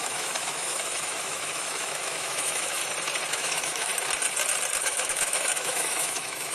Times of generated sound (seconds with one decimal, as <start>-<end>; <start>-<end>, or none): 0.0-2.8; 3.3-3.9; 4.8-6.5